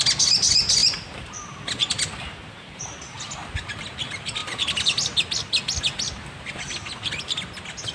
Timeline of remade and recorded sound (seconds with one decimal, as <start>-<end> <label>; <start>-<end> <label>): 0.0-7.9 recorded